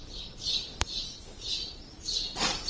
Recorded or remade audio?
remade